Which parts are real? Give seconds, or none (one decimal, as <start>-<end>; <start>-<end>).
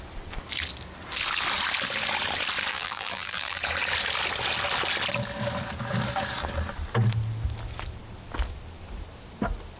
0.0-2.7; 3.6-9.8